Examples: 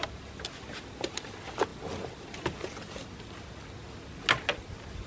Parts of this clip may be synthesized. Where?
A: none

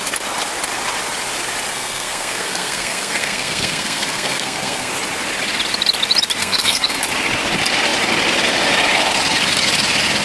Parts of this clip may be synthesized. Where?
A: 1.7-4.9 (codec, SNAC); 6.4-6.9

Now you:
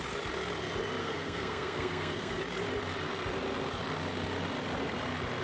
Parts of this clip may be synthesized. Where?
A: 1.0-2.4 (codec, SNAC)

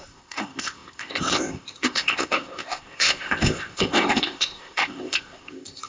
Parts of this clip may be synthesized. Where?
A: 0.0-5.9 (codec, ZipCodec)